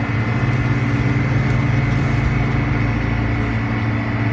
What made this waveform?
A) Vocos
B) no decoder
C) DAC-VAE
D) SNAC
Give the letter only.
B